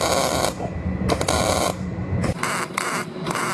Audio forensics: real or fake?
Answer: real